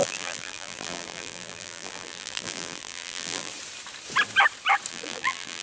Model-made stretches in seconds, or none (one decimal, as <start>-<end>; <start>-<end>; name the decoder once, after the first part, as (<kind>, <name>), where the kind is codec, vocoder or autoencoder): 0.0-3.5 (vocoder, BigVGAN v2); 4.9-5.6